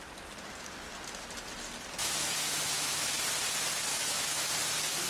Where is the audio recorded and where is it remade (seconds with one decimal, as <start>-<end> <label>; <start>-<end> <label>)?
0.0-2.0 recorded; 2.0-3.2 remade; 3.2-3.9 recorded; 3.9-4.5 remade; 4.5-5.1 recorded